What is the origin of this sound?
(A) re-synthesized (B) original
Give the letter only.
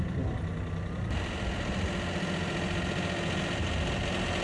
B